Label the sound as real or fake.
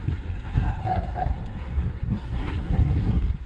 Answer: fake